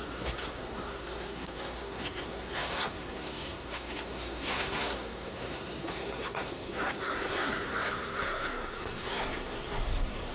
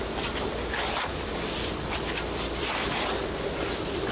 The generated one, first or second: first